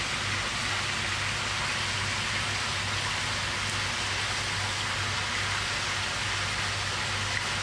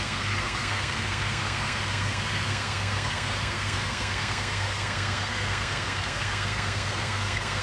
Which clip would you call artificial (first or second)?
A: second